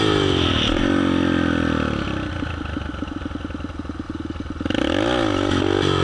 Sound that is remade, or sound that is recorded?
recorded